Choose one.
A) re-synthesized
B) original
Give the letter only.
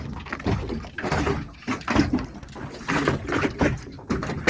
B